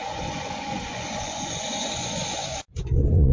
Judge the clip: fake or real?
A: fake